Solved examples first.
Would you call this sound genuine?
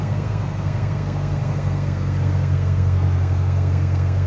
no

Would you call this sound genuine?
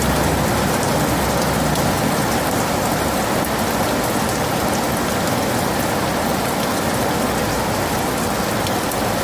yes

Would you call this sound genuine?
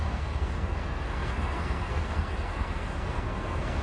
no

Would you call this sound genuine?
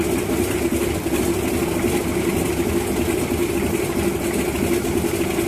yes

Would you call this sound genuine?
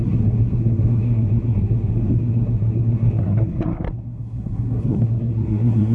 no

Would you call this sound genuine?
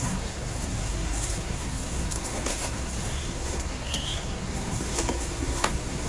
no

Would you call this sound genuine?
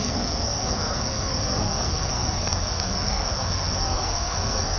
no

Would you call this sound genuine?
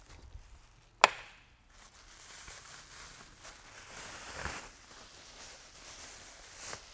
yes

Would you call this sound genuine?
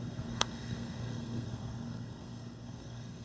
no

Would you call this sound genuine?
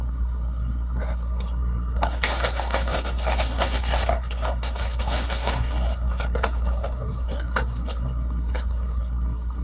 no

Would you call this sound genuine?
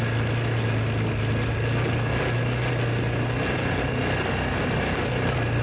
yes